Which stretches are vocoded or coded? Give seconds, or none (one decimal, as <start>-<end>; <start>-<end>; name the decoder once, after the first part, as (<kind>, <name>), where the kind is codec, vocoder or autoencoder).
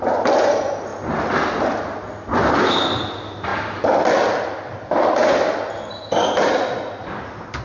none